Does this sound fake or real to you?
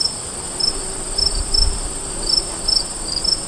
real